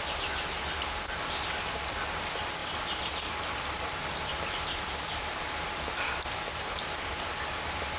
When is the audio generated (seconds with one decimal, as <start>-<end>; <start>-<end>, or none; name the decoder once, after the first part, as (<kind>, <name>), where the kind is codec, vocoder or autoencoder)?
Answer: 2.6-7.4 (vocoder, BigVGAN v2)